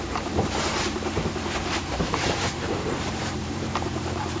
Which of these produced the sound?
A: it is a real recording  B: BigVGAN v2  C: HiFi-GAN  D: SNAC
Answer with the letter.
B